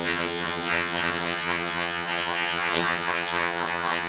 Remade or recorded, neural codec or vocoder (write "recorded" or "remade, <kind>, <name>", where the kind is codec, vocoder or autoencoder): remade, vocoder, HiFi-GAN